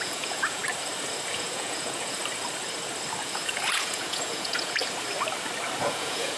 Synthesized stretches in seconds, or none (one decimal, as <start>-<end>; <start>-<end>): 0.0-0.6; 1.3-2.2; 3.2-4.8; 5.8-6.4